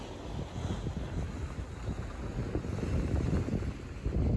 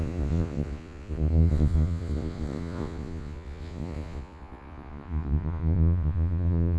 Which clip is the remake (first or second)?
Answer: second